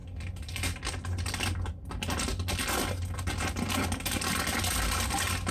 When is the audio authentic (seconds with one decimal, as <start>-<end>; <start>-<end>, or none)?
0.0-5.5

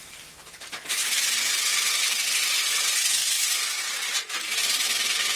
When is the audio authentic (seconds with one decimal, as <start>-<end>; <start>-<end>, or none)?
0.0-3.2; 3.8-4.6

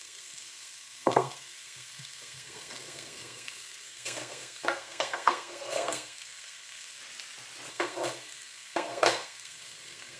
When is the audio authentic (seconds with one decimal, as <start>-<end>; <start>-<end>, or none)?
7.0-7.7

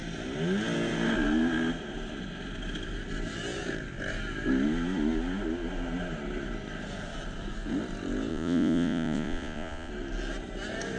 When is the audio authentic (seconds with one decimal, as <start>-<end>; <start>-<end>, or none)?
0.0-8.3; 9.9-11.0

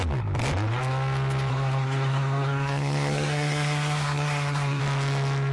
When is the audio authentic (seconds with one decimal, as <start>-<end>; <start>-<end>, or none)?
0.0-1.5; 4.8-5.5

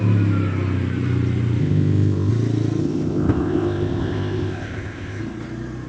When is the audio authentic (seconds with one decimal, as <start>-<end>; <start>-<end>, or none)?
0.0-1.6; 2.3-2.8; 5.2-5.9

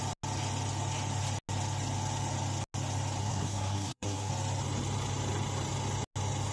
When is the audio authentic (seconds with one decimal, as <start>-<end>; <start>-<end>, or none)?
0.0-3.2; 4.3-6.5